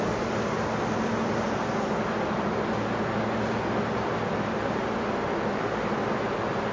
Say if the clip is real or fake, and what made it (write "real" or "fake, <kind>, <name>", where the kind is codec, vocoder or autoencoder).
real